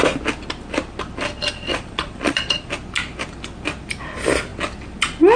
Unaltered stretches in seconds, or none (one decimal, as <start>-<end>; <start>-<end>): 0.0-1.7; 2.7-5.4